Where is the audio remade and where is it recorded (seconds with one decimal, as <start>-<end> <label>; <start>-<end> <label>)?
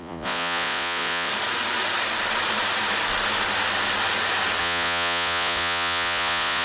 0.0-1.3 remade; 1.3-4.6 recorded; 4.6-6.6 remade